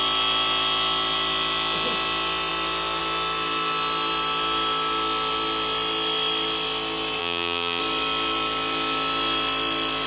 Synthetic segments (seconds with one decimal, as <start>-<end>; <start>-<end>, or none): 7.2-7.8